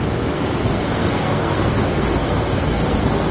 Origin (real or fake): fake